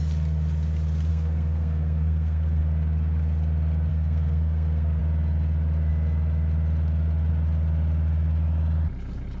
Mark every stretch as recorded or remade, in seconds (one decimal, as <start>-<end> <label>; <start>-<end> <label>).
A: 0.0-1.1 recorded; 1.1-2.6 remade; 2.6-3.9 recorded; 3.9-5.0 remade; 5.0-9.4 recorded